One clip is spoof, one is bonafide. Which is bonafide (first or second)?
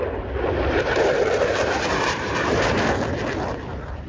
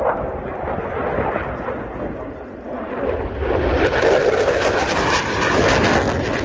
second